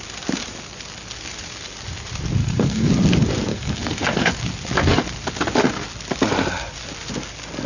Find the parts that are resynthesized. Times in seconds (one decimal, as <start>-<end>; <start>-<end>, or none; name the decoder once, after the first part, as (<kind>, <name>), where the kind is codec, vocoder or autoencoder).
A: 2.4-2.9 (codec, SNAC); 3.5-4.3